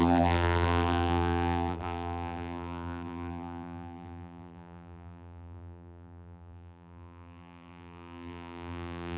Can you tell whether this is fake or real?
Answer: fake